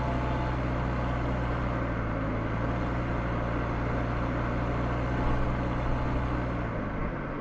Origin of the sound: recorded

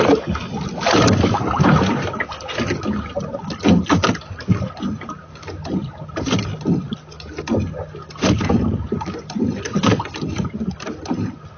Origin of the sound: recorded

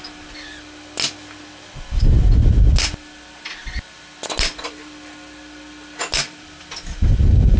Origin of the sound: recorded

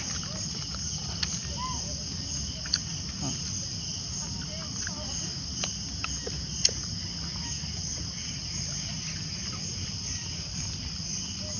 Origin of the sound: recorded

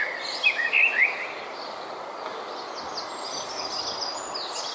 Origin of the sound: recorded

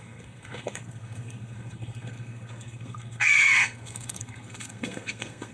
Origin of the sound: remade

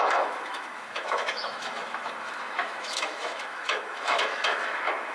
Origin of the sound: remade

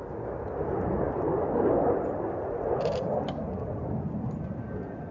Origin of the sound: recorded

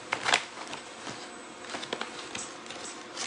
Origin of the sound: recorded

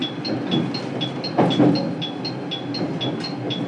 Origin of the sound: recorded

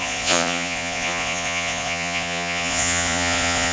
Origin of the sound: remade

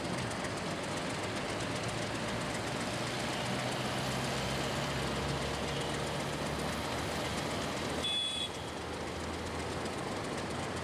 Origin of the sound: recorded